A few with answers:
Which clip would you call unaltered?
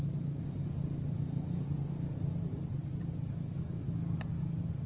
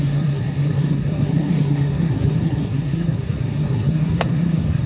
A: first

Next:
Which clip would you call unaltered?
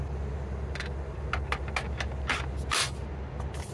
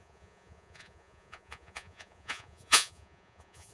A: first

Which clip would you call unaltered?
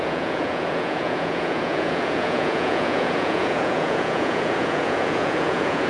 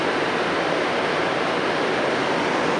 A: second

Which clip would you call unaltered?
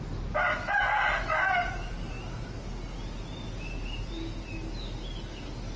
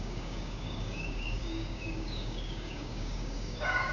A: first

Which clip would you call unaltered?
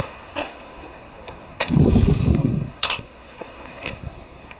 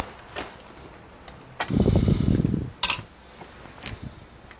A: second